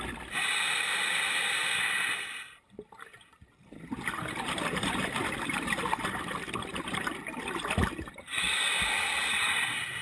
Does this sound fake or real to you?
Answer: real